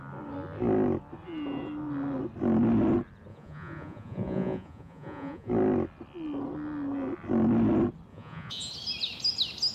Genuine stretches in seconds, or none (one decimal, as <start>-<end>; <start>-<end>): 0.0-3.3; 5.5-8.1; 8.7-9.7